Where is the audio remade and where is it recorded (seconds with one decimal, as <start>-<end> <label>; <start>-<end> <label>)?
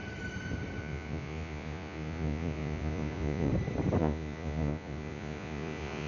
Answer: 0.0-0.8 recorded; 0.8-3.5 remade; 3.5-4.0 recorded; 4.0-6.1 remade